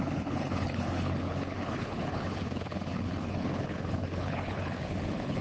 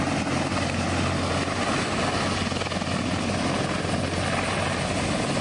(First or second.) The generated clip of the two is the first